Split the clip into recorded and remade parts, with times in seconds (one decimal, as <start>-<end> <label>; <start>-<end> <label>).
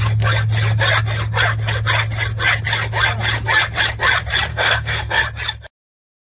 0.0-4.5 recorded; 4.5-5.2 remade; 5.2-6.2 recorded